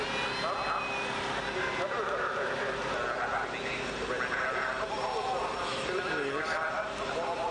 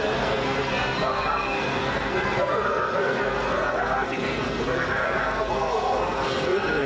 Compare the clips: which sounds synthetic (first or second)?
second